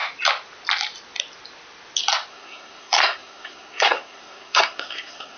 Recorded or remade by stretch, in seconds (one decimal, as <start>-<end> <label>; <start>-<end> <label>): 0.0-2.3 recorded; 2.3-5.4 remade